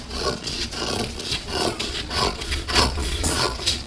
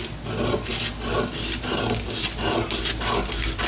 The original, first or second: second